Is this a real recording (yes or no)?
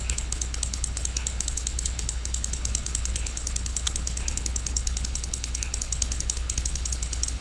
no